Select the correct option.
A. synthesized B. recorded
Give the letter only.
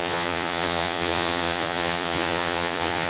A